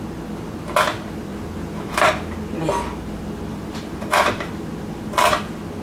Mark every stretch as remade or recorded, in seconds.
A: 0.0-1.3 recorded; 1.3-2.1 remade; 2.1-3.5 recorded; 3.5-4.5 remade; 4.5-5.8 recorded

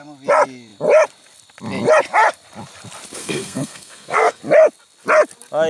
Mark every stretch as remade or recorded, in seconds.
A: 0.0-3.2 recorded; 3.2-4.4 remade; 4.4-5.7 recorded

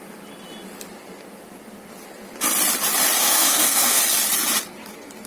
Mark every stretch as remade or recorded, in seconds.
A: 0.0-3.2 recorded; 3.2-4.0 remade; 4.0-5.3 recorded

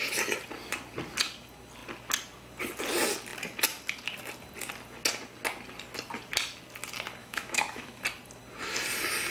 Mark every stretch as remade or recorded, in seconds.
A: 0.0-7.2 recorded; 7.2-8.0 remade; 8.0-9.3 recorded